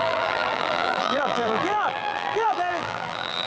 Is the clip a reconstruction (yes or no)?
yes